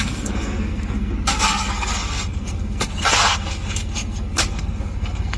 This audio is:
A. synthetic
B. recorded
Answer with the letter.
A